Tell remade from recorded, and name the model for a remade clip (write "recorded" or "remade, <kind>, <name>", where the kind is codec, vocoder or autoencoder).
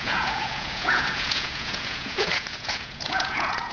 remade, vocoder, Vocos